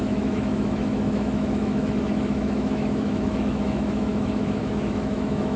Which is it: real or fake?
fake